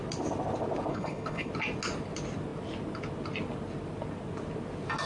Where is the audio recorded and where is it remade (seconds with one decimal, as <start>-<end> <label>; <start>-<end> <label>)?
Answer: 0.0-0.9 recorded; 0.9-1.5 remade; 1.5-5.1 recorded